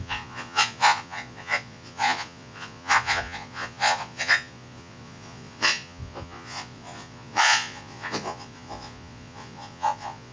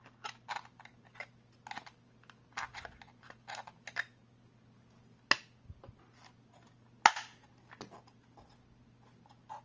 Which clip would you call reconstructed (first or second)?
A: first